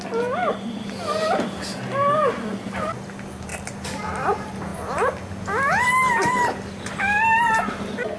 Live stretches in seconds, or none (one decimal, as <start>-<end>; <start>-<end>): 0.0-8.2